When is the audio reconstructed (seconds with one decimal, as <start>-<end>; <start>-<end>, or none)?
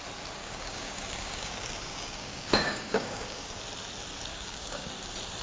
0.4-3.6; 4.3-4.9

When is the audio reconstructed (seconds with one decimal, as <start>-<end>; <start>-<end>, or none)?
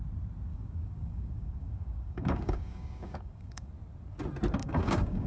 0.5-3.7; 4.6-5.3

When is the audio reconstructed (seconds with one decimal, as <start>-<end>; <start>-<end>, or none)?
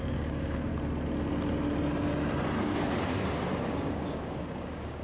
0.0-0.7; 3.7-5.0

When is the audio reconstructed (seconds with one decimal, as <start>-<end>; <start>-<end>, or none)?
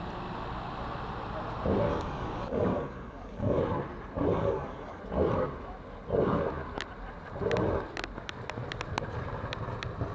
1.9-3.6; 4.3-5.0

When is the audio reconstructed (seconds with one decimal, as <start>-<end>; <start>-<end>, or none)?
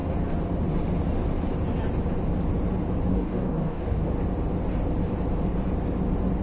3.1-4.1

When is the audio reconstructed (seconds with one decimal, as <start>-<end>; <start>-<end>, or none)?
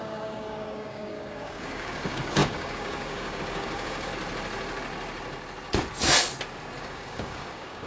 0.0-4.1; 6.8-7.9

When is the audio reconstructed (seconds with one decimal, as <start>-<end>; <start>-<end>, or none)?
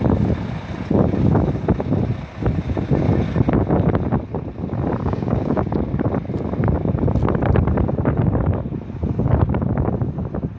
5.0-5.7